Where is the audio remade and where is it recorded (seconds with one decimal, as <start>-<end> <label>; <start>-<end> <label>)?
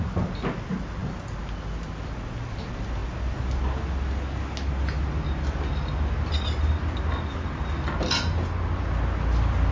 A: 0.0-9.7 recorded